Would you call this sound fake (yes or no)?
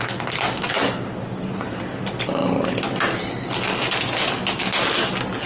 no